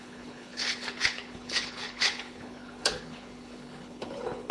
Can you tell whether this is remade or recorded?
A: remade